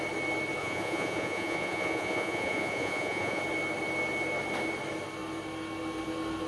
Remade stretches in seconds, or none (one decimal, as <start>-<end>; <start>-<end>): 0.6-3.4